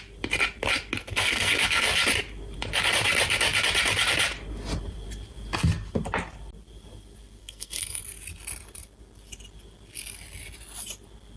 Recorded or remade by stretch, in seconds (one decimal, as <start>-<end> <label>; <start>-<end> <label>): 0.0-1.0 recorded; 1.0-1.9 remade; 1.9-7.4 recorded; 7.4-8.0 remade; 8.0-11.4 recorded